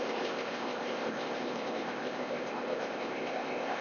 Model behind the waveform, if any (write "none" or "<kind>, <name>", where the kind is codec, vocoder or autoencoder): codec, ZipCodec